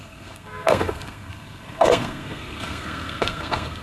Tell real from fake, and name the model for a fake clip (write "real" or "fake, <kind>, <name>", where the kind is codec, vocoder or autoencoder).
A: fake, codec, SNAC